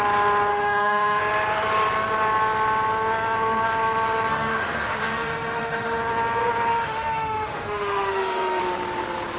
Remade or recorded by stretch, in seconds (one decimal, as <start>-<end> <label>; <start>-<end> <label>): 0.0-0.5 recorded; 0.5-1.2 remade; 1.2-4.3 recorded; 4.3-6.0 remade; 6.0-6.7 recorded; 6.7-8.6 remade; 8.6-9.4 recorded

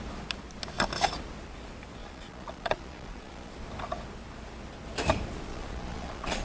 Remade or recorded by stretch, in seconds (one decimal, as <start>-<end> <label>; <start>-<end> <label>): 0.0-2.0 recorded; 2.0-3.5 remade; 3.5-5.5 recorded; 5.5-6.4 remade

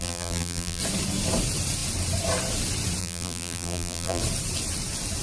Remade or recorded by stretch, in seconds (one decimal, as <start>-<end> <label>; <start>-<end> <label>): 0.0-0.8 remade; 0.8-3.0 recorded; 3.0-4.2 remade; 4.2-5.2 recorded

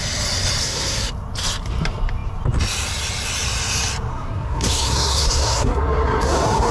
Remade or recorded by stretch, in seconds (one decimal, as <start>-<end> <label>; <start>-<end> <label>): 0.0-0.6 recorded; 0.6-1.1 remade; 1.1-4.1 recorded; 4.1-6.7 remade

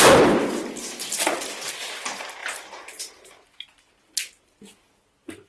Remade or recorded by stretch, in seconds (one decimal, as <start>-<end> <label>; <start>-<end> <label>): 0.0-5.5 recorded

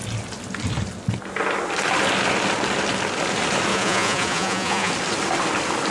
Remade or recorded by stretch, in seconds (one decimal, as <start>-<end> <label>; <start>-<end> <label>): 0.0-3.7 recorded; 3.7-4.9 remade; 4.9-5.9 recorded

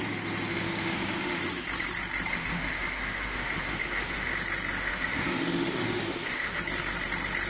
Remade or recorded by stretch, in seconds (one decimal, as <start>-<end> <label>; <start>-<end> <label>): 0.0-0.5 recorded; 0.5-1.4 remade; 1.4-2.3 recorded; 2.3-4.3 remade; 4.3-4.8 recorded; 4.8-6.6 remade; 6.6-7.5 recorded

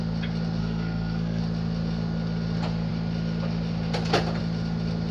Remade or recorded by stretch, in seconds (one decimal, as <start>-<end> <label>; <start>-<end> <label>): 0.0-0.6 recorded; 0.6-1.4 remade; 1.4-5.1 recorded